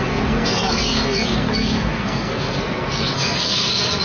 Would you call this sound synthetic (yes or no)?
yes